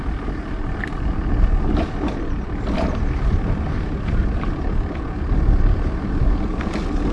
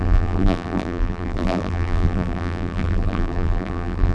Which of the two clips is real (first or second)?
first